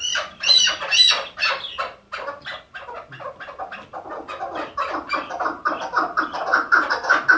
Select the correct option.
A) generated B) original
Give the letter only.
B